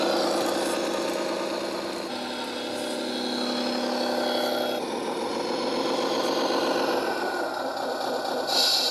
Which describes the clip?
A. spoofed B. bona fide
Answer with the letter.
B